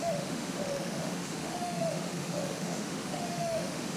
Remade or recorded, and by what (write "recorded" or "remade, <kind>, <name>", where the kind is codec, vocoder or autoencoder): remade, autoencoder, DAC-VAE